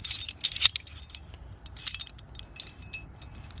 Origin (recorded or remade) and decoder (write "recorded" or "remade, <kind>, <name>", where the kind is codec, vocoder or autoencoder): recorded